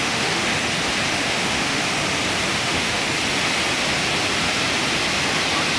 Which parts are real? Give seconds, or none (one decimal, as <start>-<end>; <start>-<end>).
0.5-1.1; 1.8-2.5; 3.0-5.8